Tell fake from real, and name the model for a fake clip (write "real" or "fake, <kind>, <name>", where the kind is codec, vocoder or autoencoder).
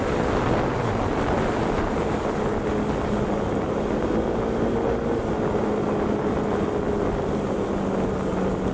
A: real